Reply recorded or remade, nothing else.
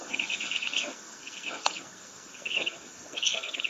remade